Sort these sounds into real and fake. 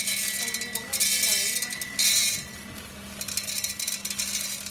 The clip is real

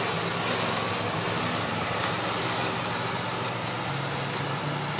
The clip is real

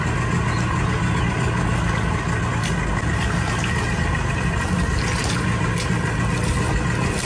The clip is real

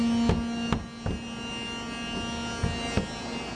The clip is real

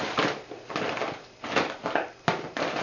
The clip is real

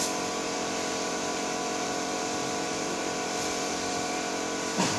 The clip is fake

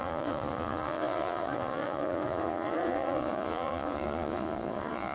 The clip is fake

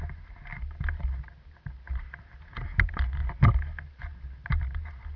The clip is real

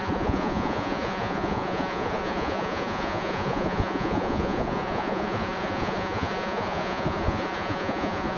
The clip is fake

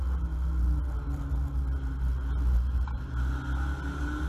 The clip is real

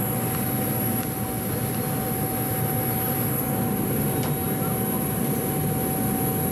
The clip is real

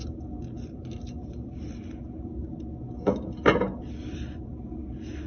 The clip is real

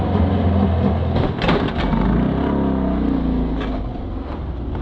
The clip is real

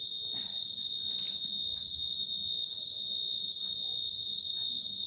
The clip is real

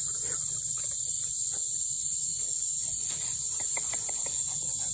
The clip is fake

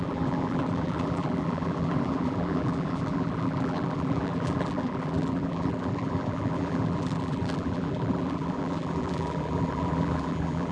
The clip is fake